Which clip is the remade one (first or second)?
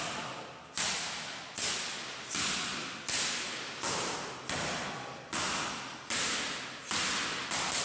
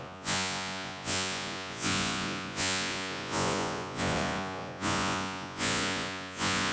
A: second